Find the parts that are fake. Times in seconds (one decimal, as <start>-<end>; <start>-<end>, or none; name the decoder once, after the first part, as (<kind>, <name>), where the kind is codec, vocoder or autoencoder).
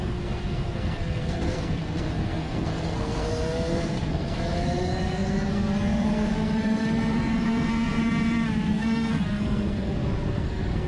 0.0-8.0 (codec, SNAC); 8.7-10.9